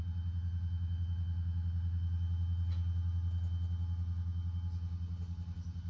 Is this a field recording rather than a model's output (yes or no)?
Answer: yes